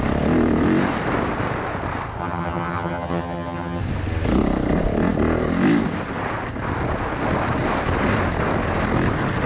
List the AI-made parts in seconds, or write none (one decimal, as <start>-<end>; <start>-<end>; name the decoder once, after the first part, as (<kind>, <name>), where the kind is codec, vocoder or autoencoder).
2.2-3.8 (vocoder, HiFi-GAN)

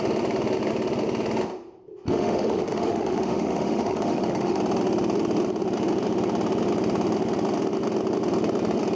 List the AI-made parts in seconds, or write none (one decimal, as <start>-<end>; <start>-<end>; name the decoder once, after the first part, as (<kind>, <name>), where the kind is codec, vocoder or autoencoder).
2.1-4.6 (autoencoder, DAC-VAE)

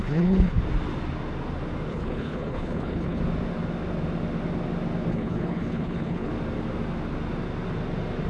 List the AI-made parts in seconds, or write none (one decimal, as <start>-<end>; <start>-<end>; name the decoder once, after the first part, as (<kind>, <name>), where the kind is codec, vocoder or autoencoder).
0.0-0.6 (codec, HILCodec); 1.9-3.2; 5.1-6.3

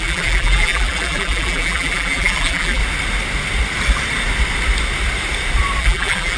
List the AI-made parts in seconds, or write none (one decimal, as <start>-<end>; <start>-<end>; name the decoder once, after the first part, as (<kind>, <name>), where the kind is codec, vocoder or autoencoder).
0.0-2.8 (vocoder, BigVGAN v2); 5.8-6.4

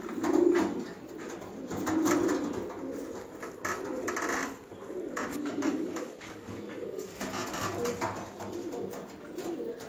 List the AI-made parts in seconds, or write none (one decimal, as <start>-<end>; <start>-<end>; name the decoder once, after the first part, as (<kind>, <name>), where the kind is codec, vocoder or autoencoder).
5.4-7.2 (codec, DAC)

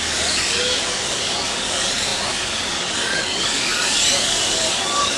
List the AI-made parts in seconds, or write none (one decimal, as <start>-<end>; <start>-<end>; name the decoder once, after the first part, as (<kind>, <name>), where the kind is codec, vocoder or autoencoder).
0.0-5.2 (codec, DAC)

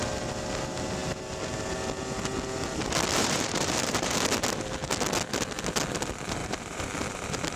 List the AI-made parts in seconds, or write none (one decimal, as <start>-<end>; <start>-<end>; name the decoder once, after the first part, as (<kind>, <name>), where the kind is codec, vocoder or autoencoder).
3.2-4.4 (vocoder, BigVGAN v2); 6.4-7.6

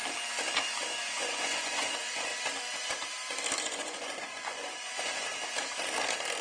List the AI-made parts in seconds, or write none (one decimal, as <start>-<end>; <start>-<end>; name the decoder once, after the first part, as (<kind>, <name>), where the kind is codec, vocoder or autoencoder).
1.0-2.3 (vocoder, Vocos); 3.6-5.3